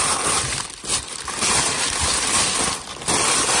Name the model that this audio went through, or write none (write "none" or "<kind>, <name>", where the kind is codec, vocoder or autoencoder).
none